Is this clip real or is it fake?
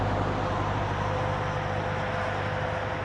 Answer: real